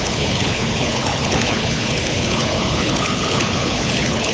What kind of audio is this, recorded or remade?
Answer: remade